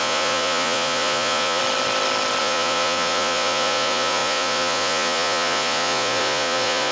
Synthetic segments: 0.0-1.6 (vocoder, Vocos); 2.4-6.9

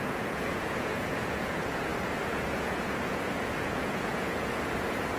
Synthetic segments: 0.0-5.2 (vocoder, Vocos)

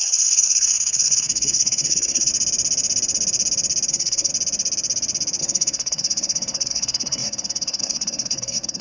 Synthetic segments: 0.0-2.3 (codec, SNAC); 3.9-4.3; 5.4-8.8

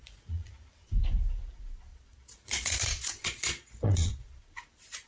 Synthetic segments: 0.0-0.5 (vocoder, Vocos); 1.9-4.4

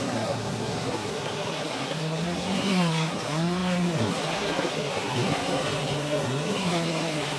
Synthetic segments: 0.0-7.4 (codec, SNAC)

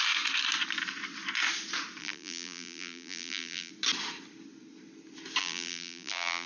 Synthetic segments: 2.0-3.7 (vocoder, BigVGAN v2); 5.4-6.5

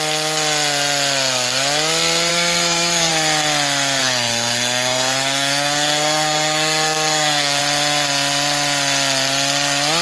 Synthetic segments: 2.3-3.1 (codec, SNAC); 4.0-7.6